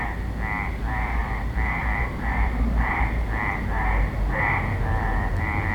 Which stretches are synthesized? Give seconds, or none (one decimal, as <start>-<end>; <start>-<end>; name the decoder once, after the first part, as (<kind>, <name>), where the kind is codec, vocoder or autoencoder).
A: 1.2-3.0 (vocoder, BigVGAN v2)